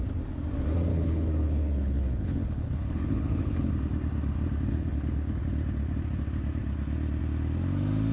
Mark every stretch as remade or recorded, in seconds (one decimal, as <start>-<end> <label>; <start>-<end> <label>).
0.0-0.9 recorded; 0.9-3.7 remade; 3.7-4.7 recorded; 4.7-5.4 remade; 5.4-8.1 recorded